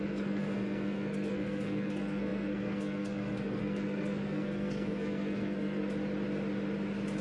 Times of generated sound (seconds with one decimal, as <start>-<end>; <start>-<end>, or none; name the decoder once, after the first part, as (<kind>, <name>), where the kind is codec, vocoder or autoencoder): 0.0-5.8 (codec, SNAC)